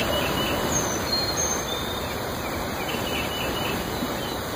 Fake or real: fake